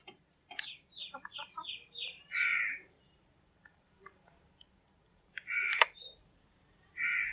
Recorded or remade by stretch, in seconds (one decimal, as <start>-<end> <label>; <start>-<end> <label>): 0.0-2.5 recorded; 2.5-7.3 remade